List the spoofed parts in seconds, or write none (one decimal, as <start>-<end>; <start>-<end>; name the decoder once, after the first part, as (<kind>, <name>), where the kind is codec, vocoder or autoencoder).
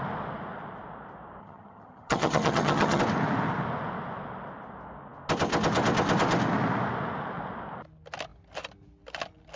1.4-3.0 (vocoder, HiFi-GAN)